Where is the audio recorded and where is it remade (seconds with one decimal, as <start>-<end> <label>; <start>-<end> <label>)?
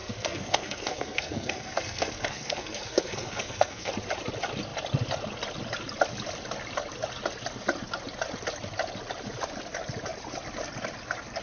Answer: 0.0-3.9 remade; 3.9-11.4 recorded